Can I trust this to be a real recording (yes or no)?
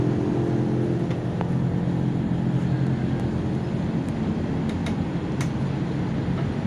yes